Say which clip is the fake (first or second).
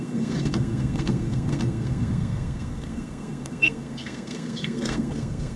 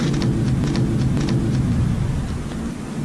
first